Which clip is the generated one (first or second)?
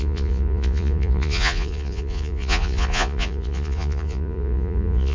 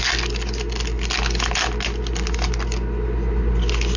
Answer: first